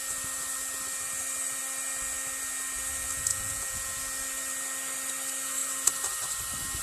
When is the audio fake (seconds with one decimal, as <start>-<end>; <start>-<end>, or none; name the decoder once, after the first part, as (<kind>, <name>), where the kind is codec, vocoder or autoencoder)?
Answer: 3.3-4.0 (vocoder, Vocos)